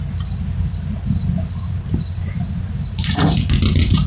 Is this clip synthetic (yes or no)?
no